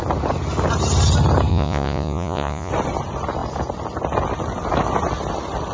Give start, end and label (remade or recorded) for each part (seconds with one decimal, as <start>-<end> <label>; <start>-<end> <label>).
0.0-1.5 recorded; 1.5-2.7 remade; 2.7-5.7 recorded